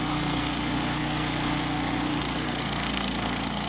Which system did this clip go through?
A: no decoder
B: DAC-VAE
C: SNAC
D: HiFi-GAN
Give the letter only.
C